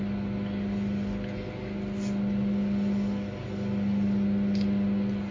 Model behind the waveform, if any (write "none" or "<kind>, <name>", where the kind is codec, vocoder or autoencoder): none